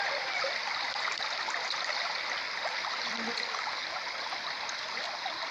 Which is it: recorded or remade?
recorded